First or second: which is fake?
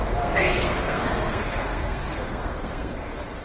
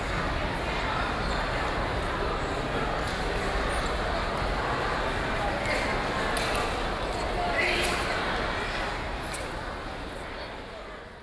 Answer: first